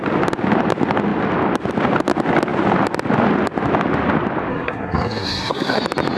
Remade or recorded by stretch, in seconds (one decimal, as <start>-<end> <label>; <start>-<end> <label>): 0.0-4.5 recorded; 4.5-5.8 remade; 5.8-6.2 recorded